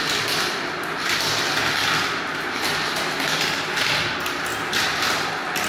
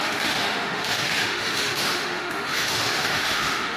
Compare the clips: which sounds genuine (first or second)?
first